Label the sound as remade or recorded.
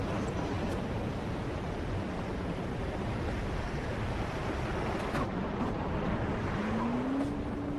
recorded